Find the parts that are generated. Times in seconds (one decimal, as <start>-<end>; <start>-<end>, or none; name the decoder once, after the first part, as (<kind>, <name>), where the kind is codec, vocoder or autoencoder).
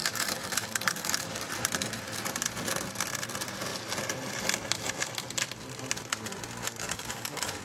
0.0-1.5 (codec, DAC); 6.6-7.6